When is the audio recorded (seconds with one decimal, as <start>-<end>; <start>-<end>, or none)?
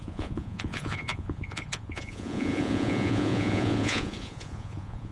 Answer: none